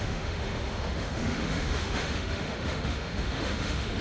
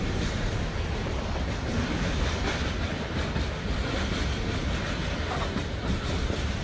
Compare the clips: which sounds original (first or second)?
second